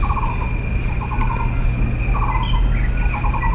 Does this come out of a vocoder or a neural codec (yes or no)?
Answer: no